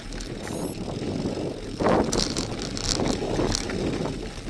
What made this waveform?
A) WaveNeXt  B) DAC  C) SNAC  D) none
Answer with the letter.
D